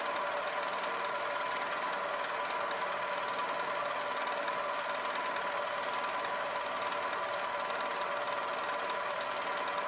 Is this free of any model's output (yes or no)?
yes